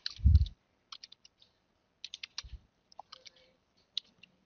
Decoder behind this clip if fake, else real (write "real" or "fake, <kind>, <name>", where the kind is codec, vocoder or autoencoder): real